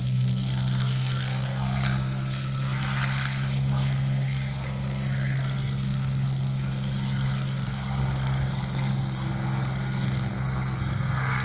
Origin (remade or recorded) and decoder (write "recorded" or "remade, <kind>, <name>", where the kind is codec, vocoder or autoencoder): remade, codec, SNAC